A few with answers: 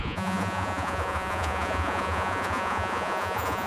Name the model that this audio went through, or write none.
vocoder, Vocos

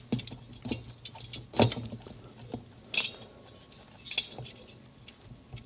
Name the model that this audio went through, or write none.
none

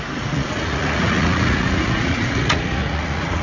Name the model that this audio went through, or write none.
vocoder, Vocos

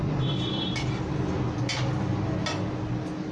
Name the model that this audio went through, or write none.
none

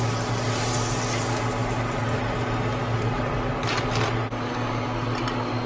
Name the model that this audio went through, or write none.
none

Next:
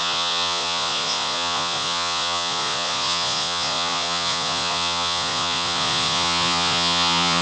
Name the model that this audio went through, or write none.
vocoder, Vocos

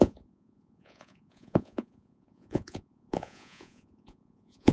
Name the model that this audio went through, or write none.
vocoder, Vocos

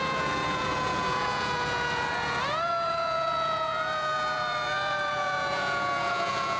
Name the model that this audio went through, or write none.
vocoder, Vocos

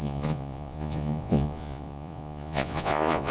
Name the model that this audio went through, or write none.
vocoder, Vocos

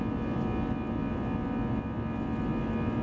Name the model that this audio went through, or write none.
none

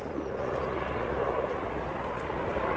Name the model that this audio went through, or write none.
vocoder, Vocos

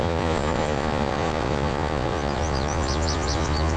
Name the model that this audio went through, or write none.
vocoder, Vocos